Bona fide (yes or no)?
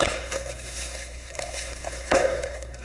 no